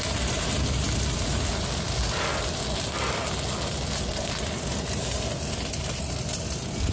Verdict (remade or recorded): recorded